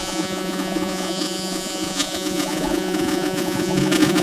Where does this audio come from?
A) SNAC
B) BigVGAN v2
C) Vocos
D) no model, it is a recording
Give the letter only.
C